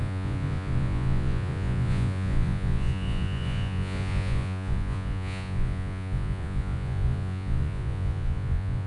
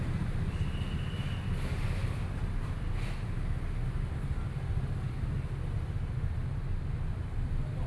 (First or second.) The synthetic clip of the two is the first